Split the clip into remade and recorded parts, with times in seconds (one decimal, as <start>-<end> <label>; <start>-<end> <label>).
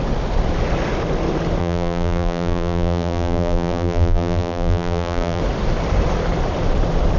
0.0-1.6 recorded; 1.6-5.4 remade; 5.4-7.2 recorded